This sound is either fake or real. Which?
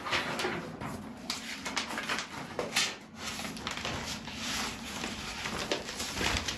real